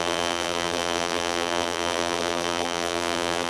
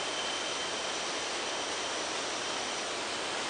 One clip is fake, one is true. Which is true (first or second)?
second